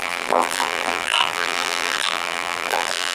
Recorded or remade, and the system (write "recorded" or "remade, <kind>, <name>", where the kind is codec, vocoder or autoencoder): remade, vocoder, BigVGAN v2